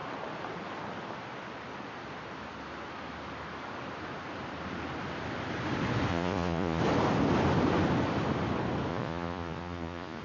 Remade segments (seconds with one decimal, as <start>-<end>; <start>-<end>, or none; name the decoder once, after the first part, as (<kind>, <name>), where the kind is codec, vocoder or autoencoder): 6.1-6.8 (vocoder, Vocos); 8.9-10.2